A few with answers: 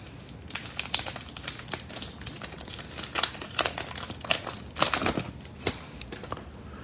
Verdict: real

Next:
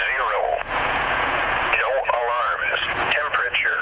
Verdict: fake